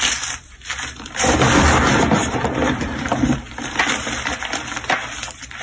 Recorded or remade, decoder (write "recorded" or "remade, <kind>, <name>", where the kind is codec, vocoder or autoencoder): remade, vocoder, BigVGAN v2